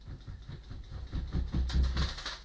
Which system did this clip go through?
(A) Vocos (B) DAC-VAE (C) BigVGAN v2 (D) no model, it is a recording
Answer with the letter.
D